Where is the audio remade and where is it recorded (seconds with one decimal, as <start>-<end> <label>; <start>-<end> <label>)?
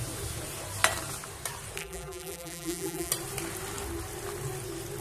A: 0.0-1.8 recorded; 1.8-3.1 remade; 3.1-5.0 recorded